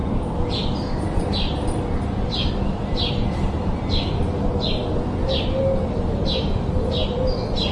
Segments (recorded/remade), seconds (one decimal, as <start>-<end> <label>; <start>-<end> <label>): 0.0-7.7 recorded